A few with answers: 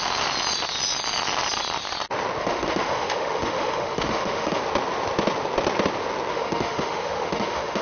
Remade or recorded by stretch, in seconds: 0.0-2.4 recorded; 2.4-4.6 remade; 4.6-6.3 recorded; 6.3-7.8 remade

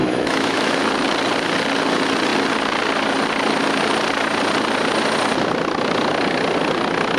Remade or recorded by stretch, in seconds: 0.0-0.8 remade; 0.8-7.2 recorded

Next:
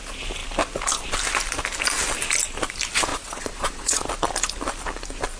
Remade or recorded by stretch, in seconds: 0.0-3.1 recorded; 3.1-4.0 remade; 4.0-5.4 recorded

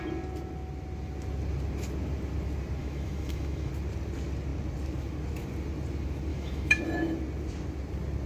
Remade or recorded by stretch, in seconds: 0.0-2.8 recorded; 2.8-3.7 remade; 3.7-6.3 recorded; 6.3-6.8 remade; 6.8-8.3 recorded

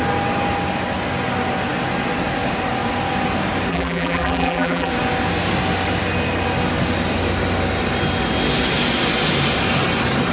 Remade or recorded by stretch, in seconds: 0.0-3.7 recorded; 3.7-4.9 remade; 4.9-10.3 recorded

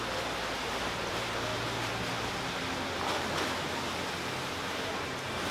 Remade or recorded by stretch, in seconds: 0.0-5.5 recorded

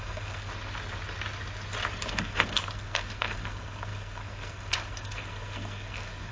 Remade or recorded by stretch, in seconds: 0.0-0.5 remade; 0.5-2.1 recorded; 2.1-6.3 remade